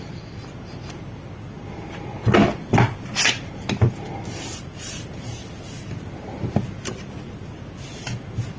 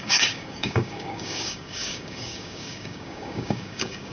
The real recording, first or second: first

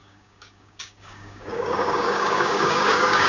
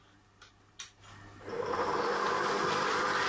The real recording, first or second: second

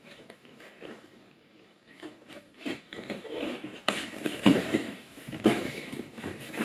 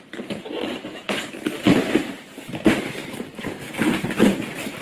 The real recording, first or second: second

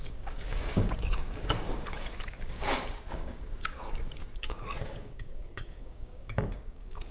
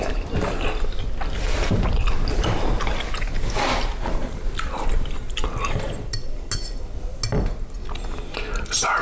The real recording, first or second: second